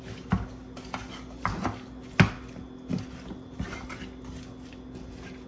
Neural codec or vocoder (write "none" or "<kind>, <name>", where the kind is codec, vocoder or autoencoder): none